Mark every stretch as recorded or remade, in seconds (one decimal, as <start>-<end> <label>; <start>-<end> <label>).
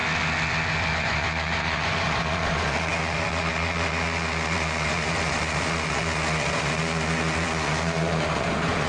0.0-1.0 recorded; 1.0-8.9 remade